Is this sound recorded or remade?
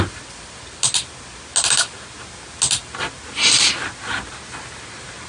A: recorded